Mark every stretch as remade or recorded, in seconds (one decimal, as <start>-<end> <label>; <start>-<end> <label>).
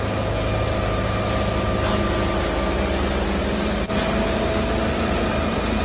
0.0-3.4 recorded; 3.4-5.8 remade